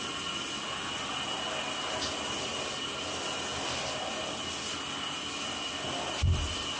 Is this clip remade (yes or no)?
no